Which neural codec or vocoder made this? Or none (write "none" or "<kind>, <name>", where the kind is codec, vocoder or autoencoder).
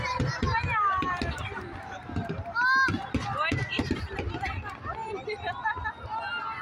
none